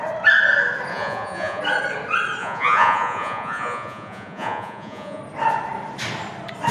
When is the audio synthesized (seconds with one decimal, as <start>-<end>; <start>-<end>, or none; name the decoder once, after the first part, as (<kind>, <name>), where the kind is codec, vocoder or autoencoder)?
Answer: 0.9-1.6 (vocoder, Vocos); 2.4-5.2